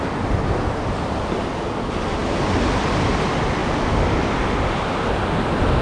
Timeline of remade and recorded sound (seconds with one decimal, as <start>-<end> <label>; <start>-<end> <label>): 0.0-5.8 recorded